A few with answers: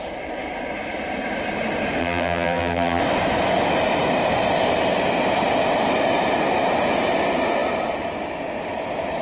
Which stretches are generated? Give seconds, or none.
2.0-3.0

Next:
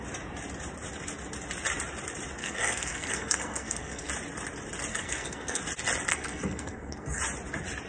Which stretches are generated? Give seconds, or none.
2.4-4.1; 4.9-5.6; 6.1-7.2

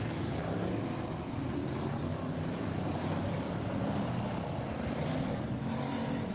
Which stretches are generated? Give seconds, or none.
none

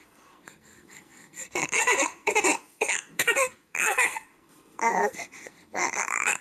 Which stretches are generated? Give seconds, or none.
0.0-6.4

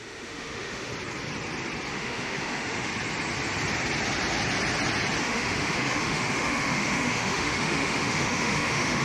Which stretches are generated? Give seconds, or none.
0.0-0.9; 1.9-2.9; 5.2-9.0

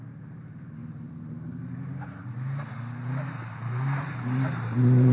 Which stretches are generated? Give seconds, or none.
0.0-5.1